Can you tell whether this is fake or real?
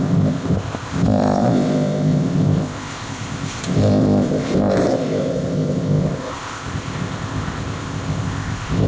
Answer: fake